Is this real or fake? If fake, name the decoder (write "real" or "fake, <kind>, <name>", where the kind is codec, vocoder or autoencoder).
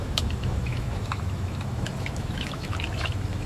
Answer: fake, autoencoder, DAC-VAE